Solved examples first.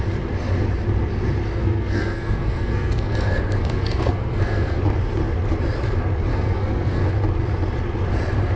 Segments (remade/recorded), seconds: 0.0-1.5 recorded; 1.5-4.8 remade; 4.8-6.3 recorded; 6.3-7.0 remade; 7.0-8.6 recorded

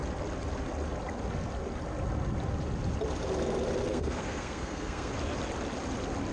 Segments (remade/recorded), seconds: 0.0-3.9 recorded; 3.9-5.1 remade; 5.1-6.3 recorded

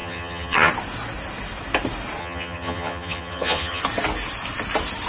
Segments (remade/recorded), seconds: 0.0-0.7 remade; 0.7-2.2 recorded; 2.2-3.8 remade; 3.8-5.1 recorded

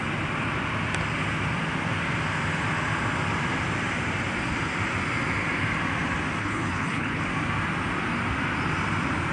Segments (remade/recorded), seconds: 0.0-6.4 recorded; 6.4-7.2 remade; 7.2-9.3 recorded